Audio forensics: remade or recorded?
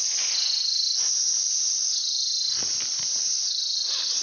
recorded